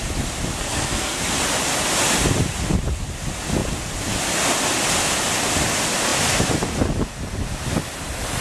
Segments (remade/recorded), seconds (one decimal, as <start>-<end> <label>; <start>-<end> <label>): 0.0-0.6 recorded; 0.6-1.2 remade; 1.2-8.4 recorded